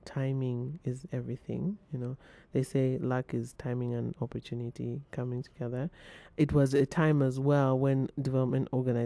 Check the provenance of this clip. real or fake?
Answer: real